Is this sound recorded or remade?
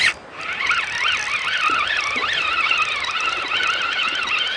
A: recorded